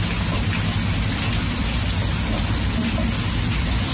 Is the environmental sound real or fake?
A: real